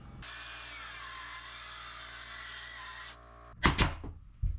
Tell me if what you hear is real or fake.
real